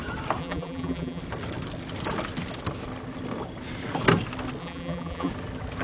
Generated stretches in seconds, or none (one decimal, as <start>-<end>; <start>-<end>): 0.4-1.2; 4.6-5.3